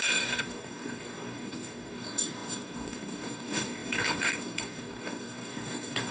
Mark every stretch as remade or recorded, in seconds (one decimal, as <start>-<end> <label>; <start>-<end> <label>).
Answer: 0.0-6.1 remade